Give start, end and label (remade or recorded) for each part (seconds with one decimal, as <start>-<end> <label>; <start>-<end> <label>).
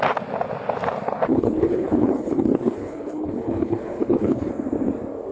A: 0.0-1.3 recorded; 1.3-4.5 remade; 4.5-5.3 recorded